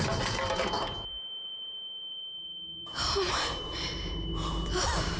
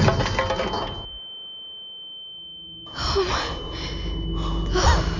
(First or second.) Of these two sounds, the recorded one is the second